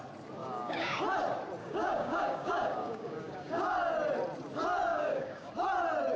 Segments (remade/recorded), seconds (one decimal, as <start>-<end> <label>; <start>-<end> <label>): 0.0-0.4 recorded; 0.4-1.0 remade; 1.0-1.6 recorded; 1.6-3.7 remade; 3.7-4.9 recorded; 4.9-5.5 remade; 5.5-6.2 recorded